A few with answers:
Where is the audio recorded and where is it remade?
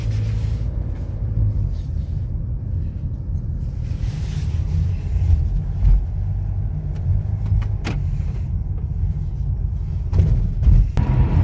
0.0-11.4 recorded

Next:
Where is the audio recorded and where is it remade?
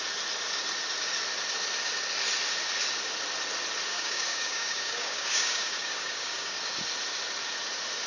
0.0-3.9 recorded; 3.9-6.6 remade; 6.6-8.1 recorded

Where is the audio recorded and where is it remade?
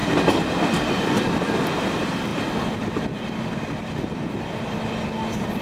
0.0-5.6 recorded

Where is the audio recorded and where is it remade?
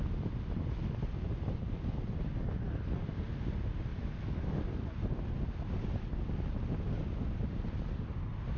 0.0-3.9 recorded; 3.9-4.7 remade; 4.7-8.6 recorded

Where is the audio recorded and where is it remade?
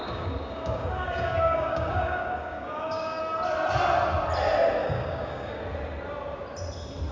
0.0-3.2 remade; 3.2-4.8 recorded; 4.8-5.6 remade; 5.6-7.1 recorded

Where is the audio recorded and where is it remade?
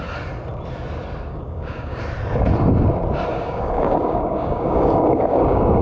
0.0-1.3 recorded; 1.3-2.0 remade; 2.0-3.3 recorded; 3.3-5.8 remade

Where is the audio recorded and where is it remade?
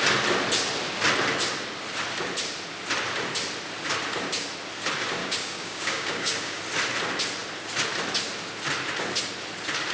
0.0-5.2 recorded; 5.2-6.6 remade; 6.6-9.9 recorded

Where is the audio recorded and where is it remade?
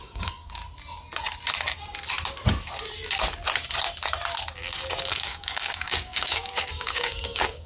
0.0-0.6 remade; 0.6-5.1 recorded; 5.1-7.7 remade